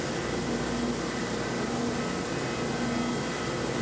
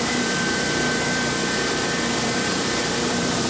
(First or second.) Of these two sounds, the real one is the first